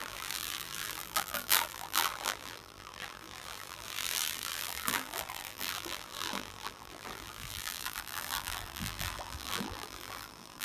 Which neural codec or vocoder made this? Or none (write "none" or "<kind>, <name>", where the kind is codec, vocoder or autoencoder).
vocoder, BigVGAN v2